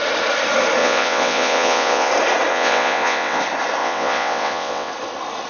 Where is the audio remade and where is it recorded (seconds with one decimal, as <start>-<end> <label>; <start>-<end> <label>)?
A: 0.0-0.8 recorded; 0.8-2.1 remade; 2.1-2.5 recorded; 2.5-3.4 remade; 3.4-3.8 recorded; 3.8-4.9 remade; 4.9-5.5 recorded